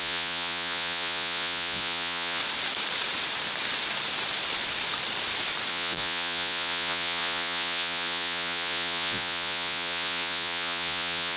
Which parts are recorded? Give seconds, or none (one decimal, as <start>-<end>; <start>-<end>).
2.4-5.7